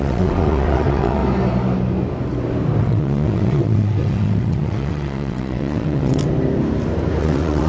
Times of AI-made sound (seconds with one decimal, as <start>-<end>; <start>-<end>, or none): 0.0-1.2; 2.8-6.2; 7.2-7.7